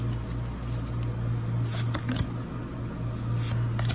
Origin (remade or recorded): recorded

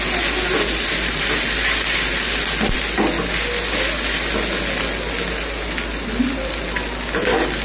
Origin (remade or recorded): recorded